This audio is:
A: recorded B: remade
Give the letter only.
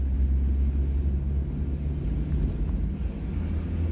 A